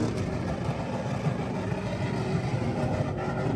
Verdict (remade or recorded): remade